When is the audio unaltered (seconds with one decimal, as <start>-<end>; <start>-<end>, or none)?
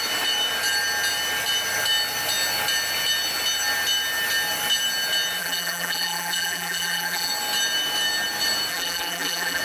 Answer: 0.0-5.4; 7.3-8.7